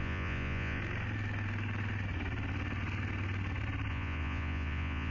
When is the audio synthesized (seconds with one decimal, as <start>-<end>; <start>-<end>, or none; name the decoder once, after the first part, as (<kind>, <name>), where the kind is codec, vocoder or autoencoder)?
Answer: 0.0-0.8 (vocoder, Vocos); 3.9-5.1